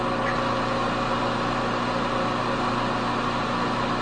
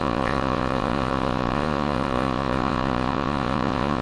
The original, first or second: first